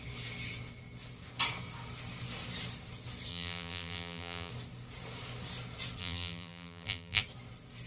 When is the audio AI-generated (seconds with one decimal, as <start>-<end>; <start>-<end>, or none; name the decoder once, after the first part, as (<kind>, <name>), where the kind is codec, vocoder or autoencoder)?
3.3-4.5 (vocoder, BigVGAN v2); 6.0-7.2